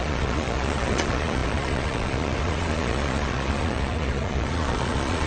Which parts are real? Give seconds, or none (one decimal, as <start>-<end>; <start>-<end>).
none